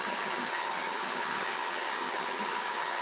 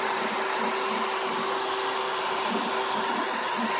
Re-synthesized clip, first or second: first